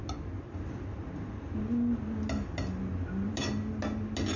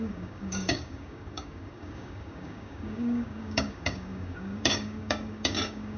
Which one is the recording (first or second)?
first